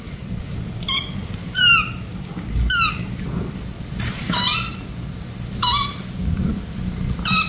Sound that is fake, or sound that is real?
real